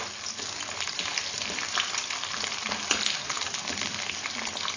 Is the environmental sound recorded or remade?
recorded